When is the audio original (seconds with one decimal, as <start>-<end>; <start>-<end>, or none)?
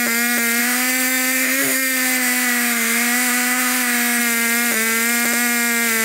0.0-0.6; 4.2-6.0